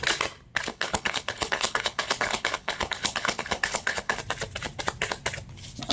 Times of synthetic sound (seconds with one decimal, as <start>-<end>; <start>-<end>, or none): 0.7-4.2